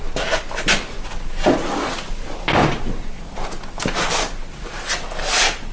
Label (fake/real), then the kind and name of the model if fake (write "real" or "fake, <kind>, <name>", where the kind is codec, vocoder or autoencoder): real